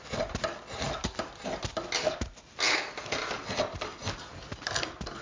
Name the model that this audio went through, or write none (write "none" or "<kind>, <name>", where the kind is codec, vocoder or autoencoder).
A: none